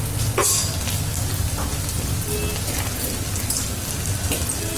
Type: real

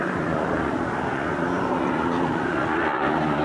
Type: fake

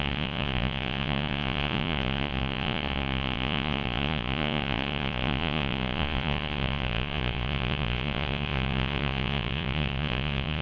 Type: fake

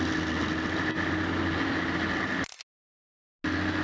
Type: real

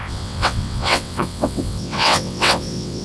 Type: fake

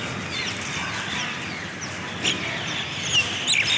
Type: real